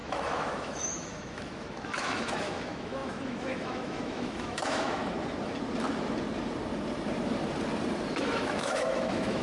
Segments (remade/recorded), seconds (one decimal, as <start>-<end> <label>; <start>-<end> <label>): 0.0-5.0 remade; 5.0-8.1 recorded; 8.1-9.4 remade